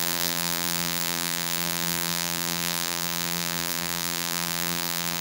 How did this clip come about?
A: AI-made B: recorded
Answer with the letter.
A